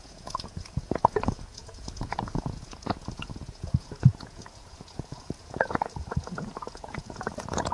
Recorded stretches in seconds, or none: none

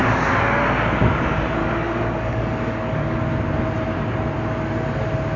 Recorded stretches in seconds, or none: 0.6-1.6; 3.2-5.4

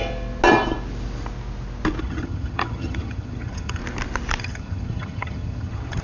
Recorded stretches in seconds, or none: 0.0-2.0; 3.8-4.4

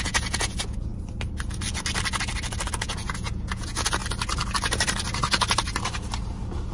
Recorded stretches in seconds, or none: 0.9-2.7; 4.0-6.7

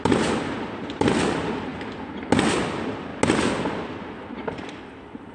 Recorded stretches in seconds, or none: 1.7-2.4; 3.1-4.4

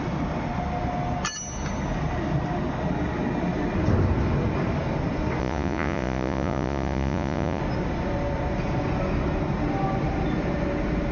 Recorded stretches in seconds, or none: 0.0-5.4; 7.6-11.1

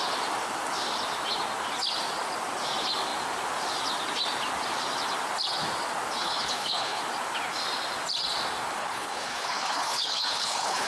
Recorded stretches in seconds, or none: 0.0-6.2; 7.0-8.8

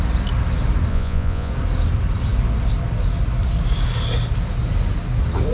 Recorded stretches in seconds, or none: 0.0-0.9; 1.5-5.5